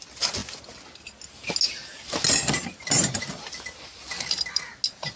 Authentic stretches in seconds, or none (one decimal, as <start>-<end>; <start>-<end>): 0.0-3.9; 4.6-5.2